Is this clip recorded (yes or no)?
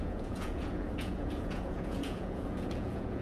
no